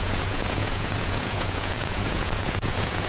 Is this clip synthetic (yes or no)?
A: yes